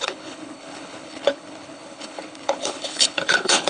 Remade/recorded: remade